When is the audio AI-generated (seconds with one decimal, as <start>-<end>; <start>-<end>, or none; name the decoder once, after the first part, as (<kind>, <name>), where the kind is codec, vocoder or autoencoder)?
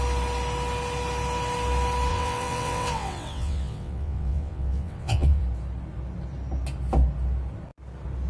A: 2.1-5.4 (vocoder, WaveNeXt)